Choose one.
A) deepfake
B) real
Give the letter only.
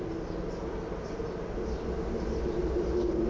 B